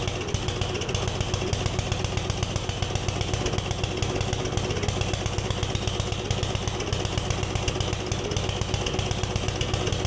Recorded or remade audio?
recorded